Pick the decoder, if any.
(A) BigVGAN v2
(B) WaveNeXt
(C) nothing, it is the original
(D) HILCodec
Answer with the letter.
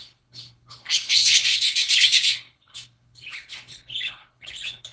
D